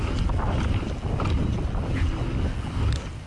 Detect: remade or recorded recorded